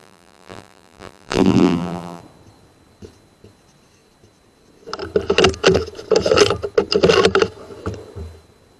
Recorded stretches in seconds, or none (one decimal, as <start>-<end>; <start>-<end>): 2.2-8.8